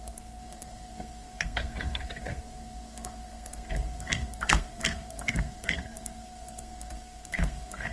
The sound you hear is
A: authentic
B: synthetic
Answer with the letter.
B